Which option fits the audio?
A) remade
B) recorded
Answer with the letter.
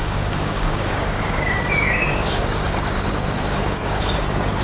A